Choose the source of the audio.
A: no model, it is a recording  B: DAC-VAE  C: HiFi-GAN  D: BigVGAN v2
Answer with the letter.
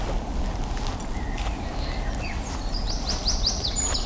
A